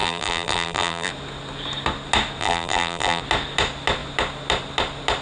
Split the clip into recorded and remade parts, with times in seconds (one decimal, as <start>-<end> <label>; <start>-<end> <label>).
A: 0.0-1.1 remade; 1.1-2.4 recorded; 2.4-3.2 remade; 3.2-5.2 recorded